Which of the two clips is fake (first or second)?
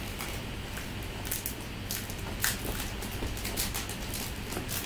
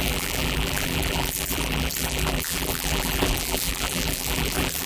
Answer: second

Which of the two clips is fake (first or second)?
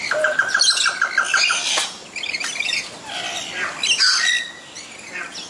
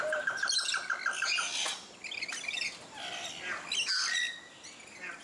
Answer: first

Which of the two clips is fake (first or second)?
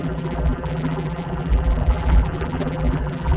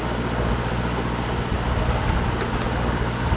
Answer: first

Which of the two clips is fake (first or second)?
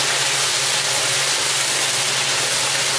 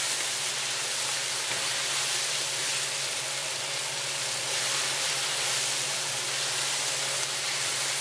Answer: second